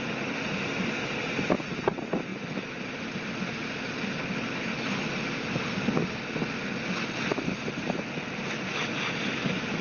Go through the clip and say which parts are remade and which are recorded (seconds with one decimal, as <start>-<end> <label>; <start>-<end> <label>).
0.0-9.8 recorded